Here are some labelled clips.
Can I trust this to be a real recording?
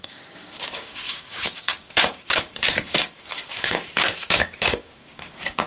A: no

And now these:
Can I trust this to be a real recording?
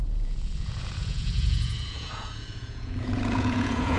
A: no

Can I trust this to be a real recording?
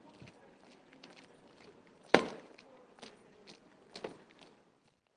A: yes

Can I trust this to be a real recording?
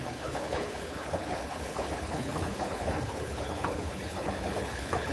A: no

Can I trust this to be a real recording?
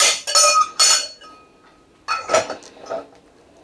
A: yes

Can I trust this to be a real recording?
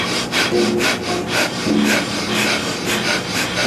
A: yes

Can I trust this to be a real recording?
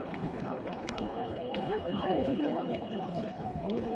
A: no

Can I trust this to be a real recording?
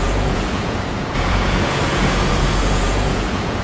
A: no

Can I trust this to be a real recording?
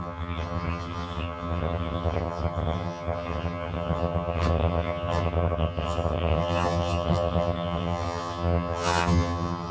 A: no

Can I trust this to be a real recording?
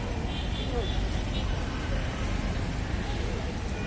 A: yes